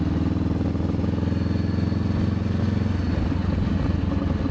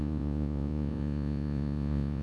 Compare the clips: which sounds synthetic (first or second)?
second